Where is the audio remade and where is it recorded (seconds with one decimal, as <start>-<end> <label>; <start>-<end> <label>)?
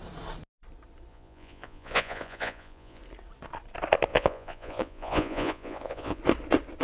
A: 0.0-1.1 recorded; 1.1-3.0 remade; 3.0-4.1 recorded; 4.1-6.2 remade; 6.2-6.8 recorded